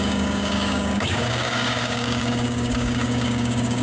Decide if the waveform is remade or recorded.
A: remade